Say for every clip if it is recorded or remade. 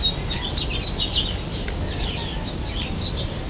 recorded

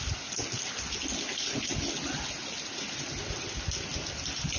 recorded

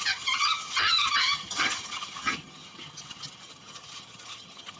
remade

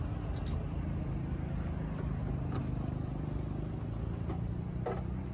recorded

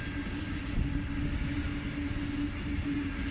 recorded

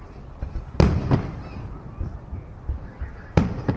recorded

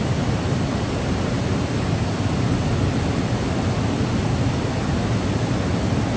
recorded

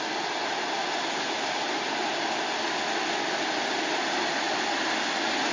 recorded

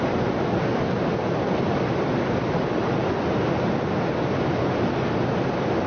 recorded